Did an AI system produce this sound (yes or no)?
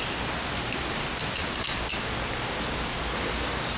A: no